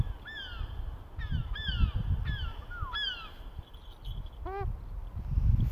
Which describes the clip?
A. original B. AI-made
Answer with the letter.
A